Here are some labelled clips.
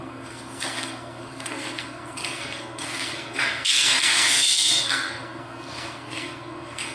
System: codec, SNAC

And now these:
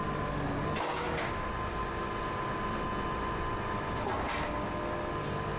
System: none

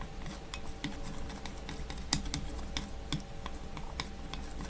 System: none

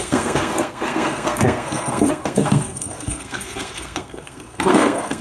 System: codec, SNAC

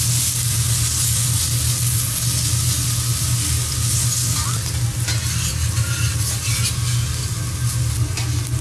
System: none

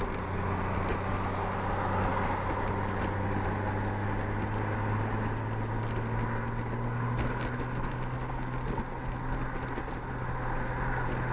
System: none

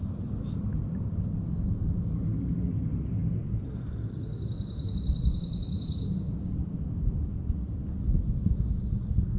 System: none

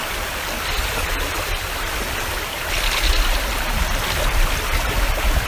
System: none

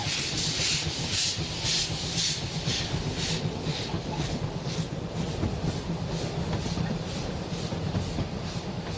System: none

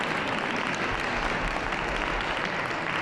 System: none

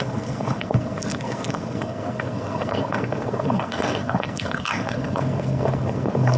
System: codec, SNAC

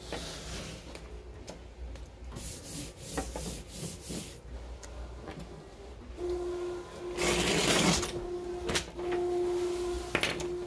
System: none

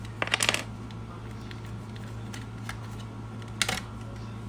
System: none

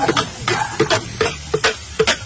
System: none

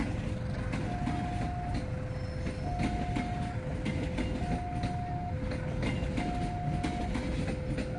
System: none